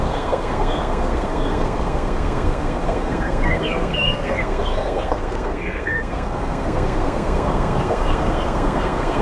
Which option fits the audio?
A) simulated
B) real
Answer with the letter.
A